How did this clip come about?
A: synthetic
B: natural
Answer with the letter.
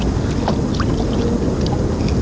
B